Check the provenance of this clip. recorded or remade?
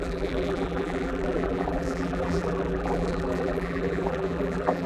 remade